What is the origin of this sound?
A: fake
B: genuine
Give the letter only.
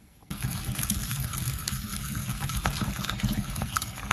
A